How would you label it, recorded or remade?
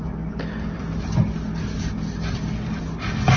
recorded